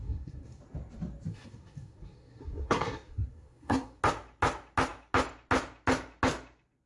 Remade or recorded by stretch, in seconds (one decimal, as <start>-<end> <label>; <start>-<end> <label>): 0.0-0.6 remade; 0.6-1.3 recorded; 1.3-4.0 remade; 4.0-6.9 recorded